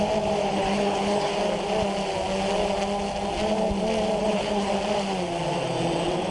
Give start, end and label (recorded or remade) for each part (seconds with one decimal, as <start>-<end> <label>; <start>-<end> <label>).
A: 0.0-0.4 recorded; 0.4-1.3 remade; 1.3-4.2 recorded; 4.2-4.7 remade; 4.7-6.3 recorded